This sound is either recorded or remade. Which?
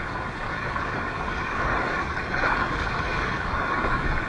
remade